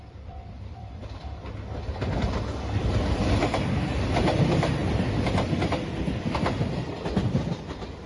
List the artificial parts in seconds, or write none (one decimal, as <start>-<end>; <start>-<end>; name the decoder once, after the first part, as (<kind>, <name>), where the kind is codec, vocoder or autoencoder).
0.0-1.0 (vocoder, BigVGAN v2); 2.8-4.8; 5.7-8.1